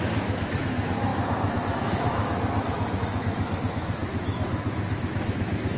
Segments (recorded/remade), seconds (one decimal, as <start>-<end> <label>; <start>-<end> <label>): 0.0-5.8 remade